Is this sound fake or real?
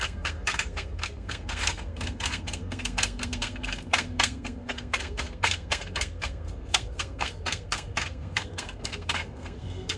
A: fake